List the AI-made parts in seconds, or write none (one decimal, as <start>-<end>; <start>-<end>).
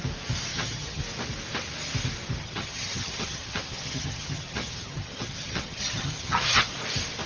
0.5-1.0; 2.4-6.7